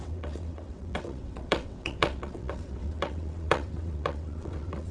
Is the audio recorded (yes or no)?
no